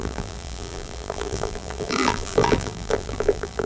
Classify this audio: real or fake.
fake